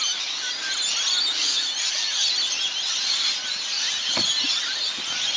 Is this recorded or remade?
recorded